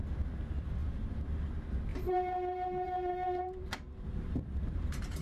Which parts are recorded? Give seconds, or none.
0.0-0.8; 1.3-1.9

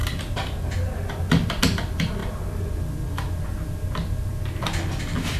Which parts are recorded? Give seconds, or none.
0.9-5.4

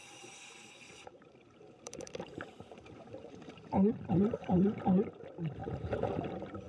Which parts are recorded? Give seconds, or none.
3.9-4.4; 5.1-5.6; 6.1-6.7

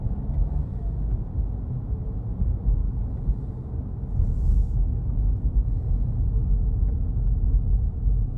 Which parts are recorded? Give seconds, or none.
0.0-8.4

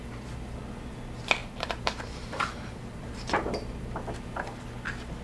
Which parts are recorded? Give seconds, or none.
0.0-1.4; 3.7-5.2

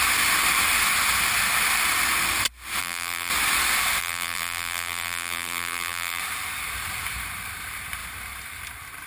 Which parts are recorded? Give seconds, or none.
0.0-2.8; 3.3-4.0; 6.2-9.1

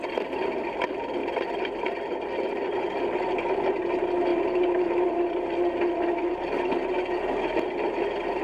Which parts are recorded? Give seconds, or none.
0.0-4.3; 5.3-8.4